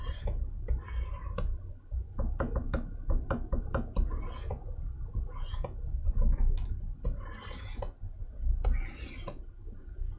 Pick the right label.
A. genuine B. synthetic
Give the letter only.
A